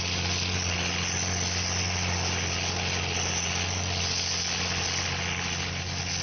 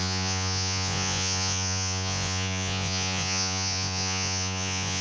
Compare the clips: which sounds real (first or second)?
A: first